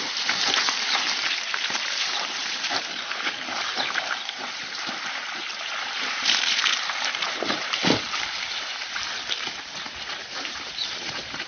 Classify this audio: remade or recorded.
remade